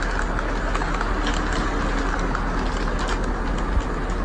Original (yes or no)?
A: yes